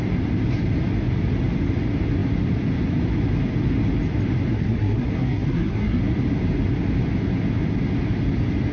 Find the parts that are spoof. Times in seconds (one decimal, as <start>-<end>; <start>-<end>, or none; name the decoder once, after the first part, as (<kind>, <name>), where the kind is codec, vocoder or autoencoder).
4.5-6.0 (codec, SNAC)